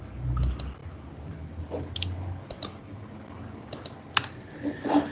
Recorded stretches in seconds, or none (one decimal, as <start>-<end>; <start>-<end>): 0.0-5.1